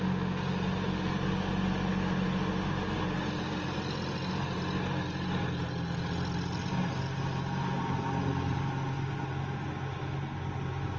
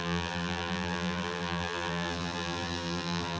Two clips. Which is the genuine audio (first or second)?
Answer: first